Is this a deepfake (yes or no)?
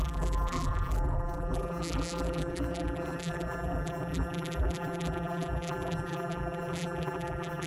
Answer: yes